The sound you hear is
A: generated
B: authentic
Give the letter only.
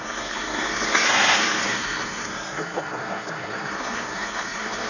A